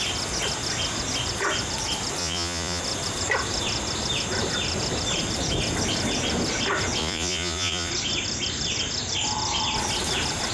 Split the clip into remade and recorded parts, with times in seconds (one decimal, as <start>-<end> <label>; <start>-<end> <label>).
0.0-2.2 recorded; 2.2-2.8 remade; 2.8-7.0 recorded; 7.0-7.9 remade; 7.9-10.5 recorded